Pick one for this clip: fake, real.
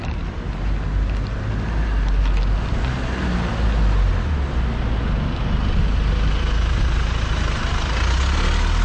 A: real